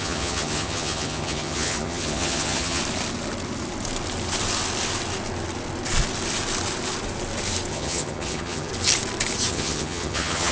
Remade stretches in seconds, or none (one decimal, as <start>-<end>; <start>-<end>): 0.0-2.8; 7.7-8.7; 9.5-10.5